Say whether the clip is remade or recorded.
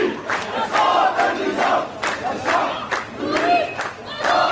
recorded